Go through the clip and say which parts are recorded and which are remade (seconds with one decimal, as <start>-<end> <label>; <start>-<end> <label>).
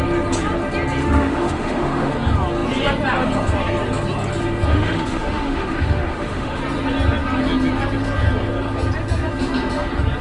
0.0-1.0 recorded; 1.0-2.1 remade; 2.1-4.7 recorded; 4.7-6.6 remade; 6.6-10.2 recorded